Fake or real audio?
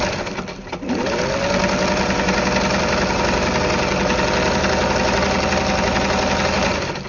real